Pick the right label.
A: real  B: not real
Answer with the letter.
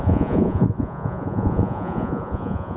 B